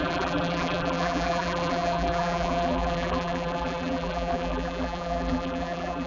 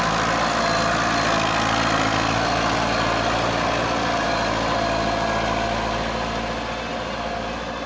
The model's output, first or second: first